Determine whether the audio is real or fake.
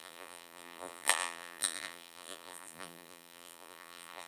fake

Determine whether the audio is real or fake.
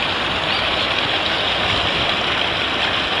real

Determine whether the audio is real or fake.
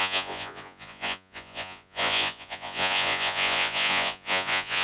fake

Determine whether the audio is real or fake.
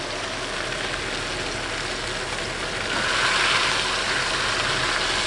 real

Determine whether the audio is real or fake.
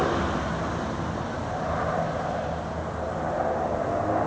real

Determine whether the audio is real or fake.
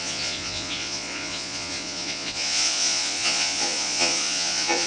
fake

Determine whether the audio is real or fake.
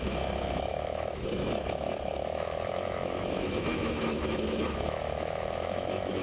fake